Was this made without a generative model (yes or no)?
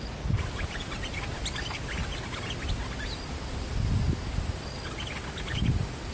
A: yes